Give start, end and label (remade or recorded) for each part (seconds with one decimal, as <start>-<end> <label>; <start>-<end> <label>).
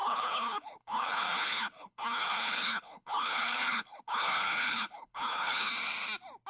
0.0-5.7 remade; 5.7-6.5 recorded